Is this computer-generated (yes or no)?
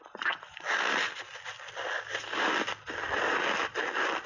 no